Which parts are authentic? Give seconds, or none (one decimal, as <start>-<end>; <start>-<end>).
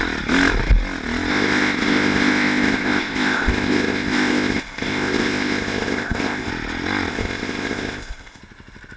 0.0-1.3; 6.5-7.1; 8.4-9.0